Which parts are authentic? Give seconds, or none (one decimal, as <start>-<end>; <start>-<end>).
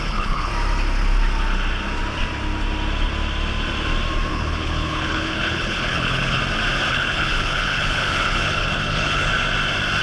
0.5-4.3; 6.4-6.9; 9.3-10.0